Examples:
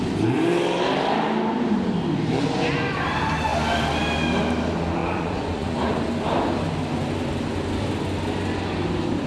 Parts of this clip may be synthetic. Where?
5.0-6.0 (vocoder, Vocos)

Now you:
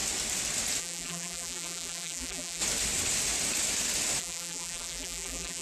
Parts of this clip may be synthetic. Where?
0.8-2.6 (vocoder, BigVGAN v2); 4.2-5.6